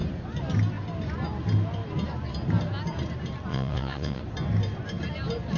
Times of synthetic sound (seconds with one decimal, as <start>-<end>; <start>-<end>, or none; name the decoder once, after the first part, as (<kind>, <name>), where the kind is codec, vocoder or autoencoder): 3.5-4.2 (vocoder, Vocos)